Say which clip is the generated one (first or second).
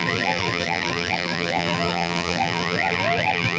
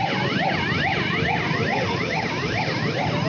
first